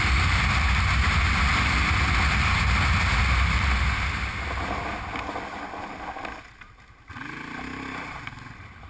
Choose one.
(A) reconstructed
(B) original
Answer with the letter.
B